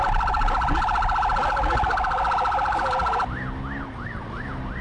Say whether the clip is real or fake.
real